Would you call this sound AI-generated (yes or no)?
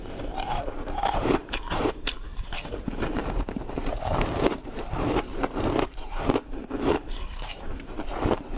yes